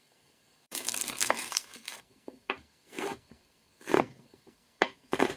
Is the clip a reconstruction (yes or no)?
yes